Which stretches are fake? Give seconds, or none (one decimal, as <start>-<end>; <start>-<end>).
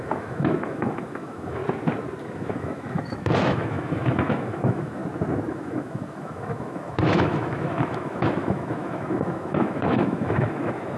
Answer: 0.0-1.6; 2.2-5.0; 5.5-11.0